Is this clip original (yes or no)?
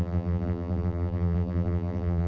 no